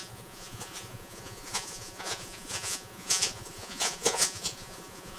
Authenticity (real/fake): fake